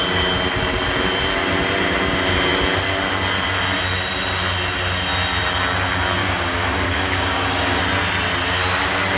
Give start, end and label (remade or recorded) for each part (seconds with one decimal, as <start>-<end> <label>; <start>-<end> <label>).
0.0-6.2 recorded; 6.2-7.8 remade; 7.8-9.2 recorded